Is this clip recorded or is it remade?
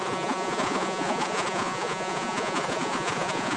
remade